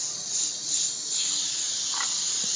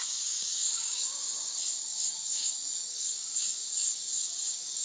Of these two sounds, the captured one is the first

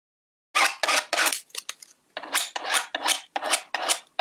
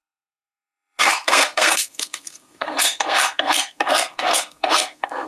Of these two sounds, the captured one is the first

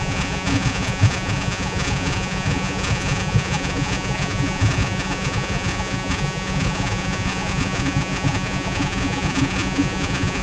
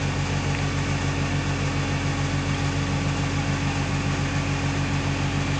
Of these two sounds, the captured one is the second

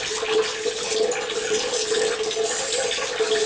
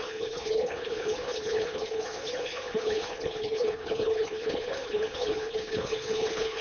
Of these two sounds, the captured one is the first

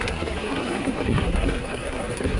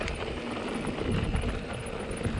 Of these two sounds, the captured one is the second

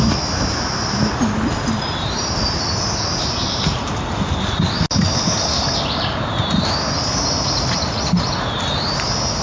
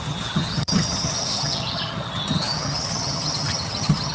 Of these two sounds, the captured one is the first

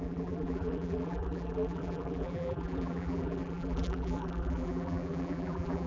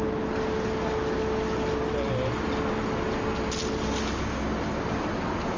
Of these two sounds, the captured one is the second